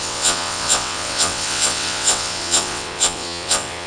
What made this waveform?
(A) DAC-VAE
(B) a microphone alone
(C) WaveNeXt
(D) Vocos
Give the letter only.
C